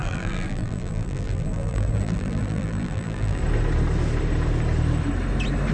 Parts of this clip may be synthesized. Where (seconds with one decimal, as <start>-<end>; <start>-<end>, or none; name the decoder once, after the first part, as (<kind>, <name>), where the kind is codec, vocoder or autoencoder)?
0.0-3.4 (vocoder, BigVGAN v2)